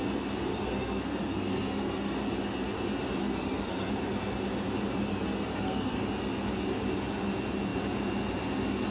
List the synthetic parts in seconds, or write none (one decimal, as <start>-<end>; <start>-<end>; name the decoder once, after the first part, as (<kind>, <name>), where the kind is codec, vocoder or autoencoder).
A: 0.5-2.2 (codec, SNAC); 3.2-3.9; 5.1-6.0